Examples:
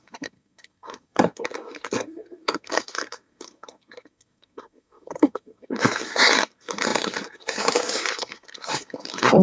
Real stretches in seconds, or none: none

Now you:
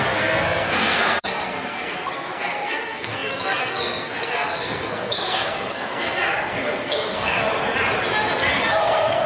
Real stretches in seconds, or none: 7.5-8.7

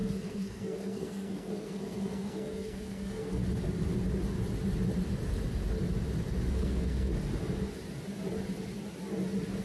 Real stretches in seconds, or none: 3.4-6.5; 7.1-9.6

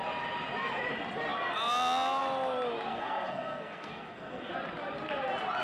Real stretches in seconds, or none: 0.0-2.9; 4.5-5.6

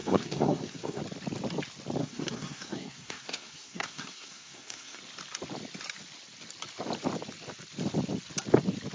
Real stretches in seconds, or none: 1.0-2.0; 5.0-8.9

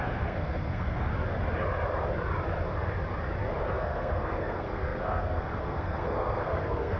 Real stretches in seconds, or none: 1.1-3.6

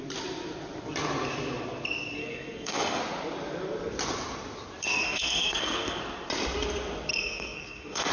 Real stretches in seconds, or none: 0.0-2.2; 3.0-4.8; 6.0-7.1